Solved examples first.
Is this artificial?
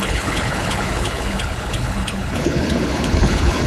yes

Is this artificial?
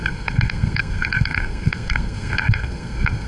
yes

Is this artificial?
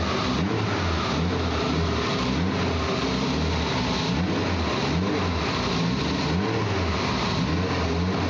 no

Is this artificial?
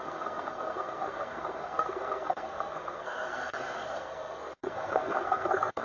yes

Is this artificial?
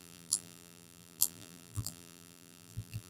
yes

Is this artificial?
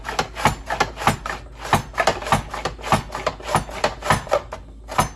no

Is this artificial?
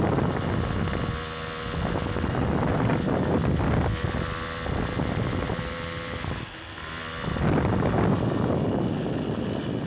no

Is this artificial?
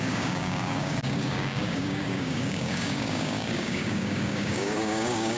yes